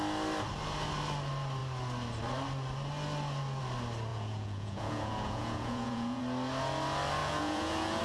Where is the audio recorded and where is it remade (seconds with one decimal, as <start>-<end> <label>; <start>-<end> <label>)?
0.0-4.1 recorded; 4.1-6.2 remade; 6.2-7.2 recorded; 7.2-8.0 remade